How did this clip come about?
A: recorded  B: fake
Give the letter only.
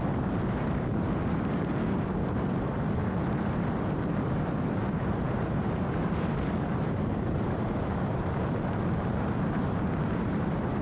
B